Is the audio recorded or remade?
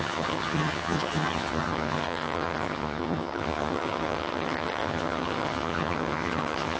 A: remade